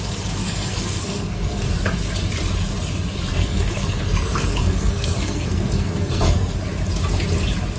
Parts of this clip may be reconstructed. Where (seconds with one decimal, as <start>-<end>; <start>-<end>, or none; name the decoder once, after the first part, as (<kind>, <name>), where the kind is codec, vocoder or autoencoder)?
0.4-1.7 (codec, SNAC); 3.3-6.6